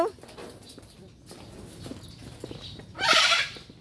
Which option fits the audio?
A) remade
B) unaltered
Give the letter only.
B